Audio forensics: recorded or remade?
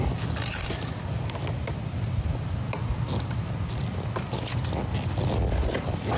recorded